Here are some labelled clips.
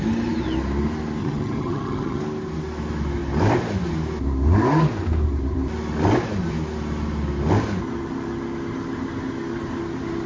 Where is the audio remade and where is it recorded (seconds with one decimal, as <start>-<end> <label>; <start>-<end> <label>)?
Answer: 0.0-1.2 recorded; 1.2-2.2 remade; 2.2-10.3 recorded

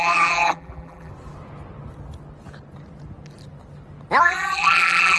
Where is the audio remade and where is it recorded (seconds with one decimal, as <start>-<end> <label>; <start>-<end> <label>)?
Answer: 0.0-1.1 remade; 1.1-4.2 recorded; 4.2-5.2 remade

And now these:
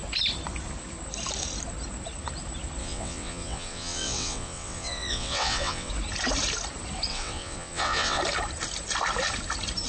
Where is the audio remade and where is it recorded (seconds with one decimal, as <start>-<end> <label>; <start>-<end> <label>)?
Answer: 0.0-2.8 recorded; 2.8-5.9 remade; 5.9-7.1 recorded; 7.1-8.2 remade; 8.2-9.9 recorded

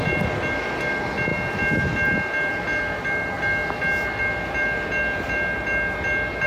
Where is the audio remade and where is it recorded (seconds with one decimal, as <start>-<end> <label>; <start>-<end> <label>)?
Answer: 0.0-6.5 recorded

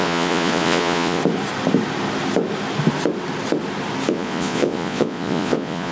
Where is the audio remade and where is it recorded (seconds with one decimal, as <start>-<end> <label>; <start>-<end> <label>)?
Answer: 0.0-1.2 remade; 1.2-4.1 recorded; 4.1-5.9 remade

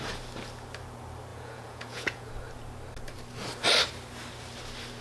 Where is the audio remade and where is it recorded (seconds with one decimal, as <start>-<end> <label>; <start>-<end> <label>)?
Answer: 0.0-1.3 recorded; 1.3-2.3 remade; 2.3-5.0 recorded